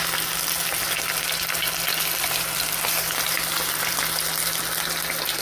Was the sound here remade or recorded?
recorded